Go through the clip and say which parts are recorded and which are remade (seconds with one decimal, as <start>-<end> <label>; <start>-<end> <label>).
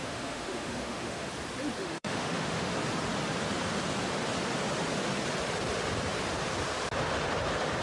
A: 0.0-1.3 remade; 1.3-1.8 recorded; 1.8-2.7 remade; 2.7-7.8 recorded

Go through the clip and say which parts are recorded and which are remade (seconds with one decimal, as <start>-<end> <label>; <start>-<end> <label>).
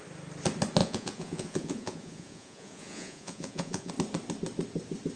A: 0.0-0.8 recorded; 0.8-3.9 remade; 3.9-5.2 recorded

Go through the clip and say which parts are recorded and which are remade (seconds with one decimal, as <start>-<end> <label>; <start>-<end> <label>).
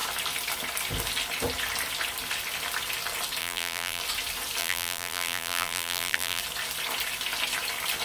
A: 0.0-3.4 recorded; 3.4-4.0 remade; 4.0-4.6 recorded; 4.6-6.4 remade; 6.4-8.0 recorded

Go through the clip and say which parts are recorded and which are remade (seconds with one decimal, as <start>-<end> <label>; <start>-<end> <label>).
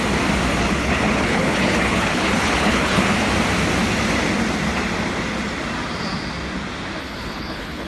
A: 0.0-0.6 recorded; 0.6-3.0 remade; 3.0-7.0 recorded; 7.0-7.9 remade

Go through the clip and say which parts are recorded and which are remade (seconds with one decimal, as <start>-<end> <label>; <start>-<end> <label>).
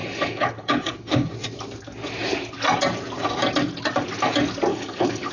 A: 0.0-1.3 remade; 1.3-4.7 recorded; 4.7-5.3 remade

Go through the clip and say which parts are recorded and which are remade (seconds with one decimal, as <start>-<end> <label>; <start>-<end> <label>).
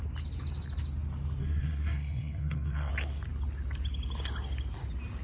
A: 0.0-1.4 recorded; 1.4-2.9 remade; 2.9-5.2 recorded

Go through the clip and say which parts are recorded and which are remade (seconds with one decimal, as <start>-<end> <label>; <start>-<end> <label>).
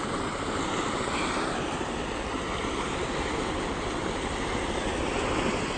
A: 0.0-5.8 recorded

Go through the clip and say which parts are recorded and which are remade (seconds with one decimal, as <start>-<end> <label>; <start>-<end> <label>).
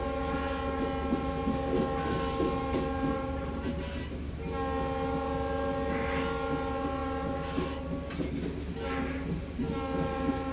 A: 0.0-10.5 recorded